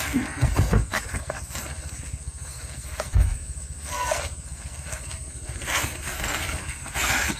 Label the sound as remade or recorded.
remade